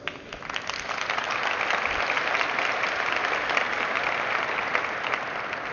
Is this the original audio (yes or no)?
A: yes